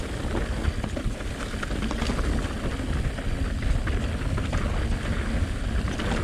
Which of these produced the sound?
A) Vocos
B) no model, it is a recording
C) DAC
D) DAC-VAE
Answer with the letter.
B